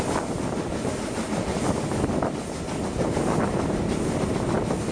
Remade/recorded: recorded